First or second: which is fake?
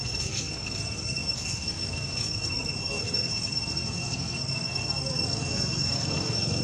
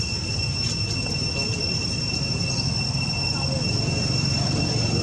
first